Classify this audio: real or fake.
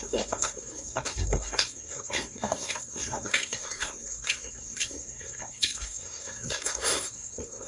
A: fake